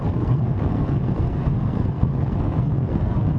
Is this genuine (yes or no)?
no